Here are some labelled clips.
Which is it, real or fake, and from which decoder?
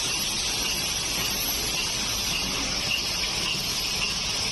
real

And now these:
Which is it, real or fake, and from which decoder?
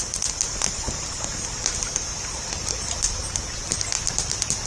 real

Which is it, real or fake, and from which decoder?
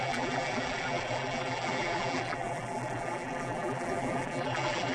fake, vocoder, BigVGAN v2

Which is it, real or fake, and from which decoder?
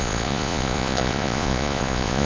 fake, vocoder, Vocos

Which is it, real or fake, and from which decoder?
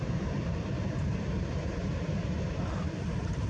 fake, vocoder, BigVGAN v2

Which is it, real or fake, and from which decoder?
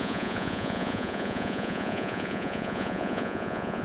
fake, vocoder, Vocos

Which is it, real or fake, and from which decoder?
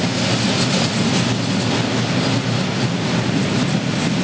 real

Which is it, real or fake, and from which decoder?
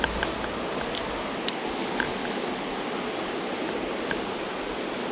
real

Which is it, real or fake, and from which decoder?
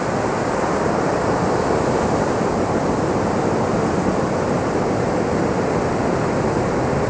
real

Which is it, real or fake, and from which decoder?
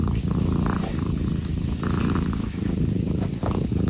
real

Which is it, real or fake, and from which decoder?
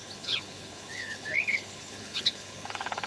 fake, codec, HILCodec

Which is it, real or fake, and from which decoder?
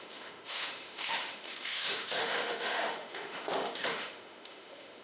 fake, autoencoder, DAC-VAE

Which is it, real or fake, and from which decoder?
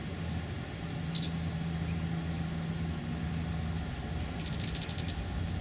real